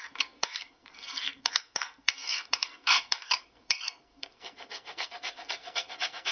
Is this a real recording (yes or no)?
no